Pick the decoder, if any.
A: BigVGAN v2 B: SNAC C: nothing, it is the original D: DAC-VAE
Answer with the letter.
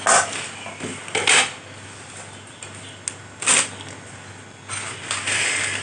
C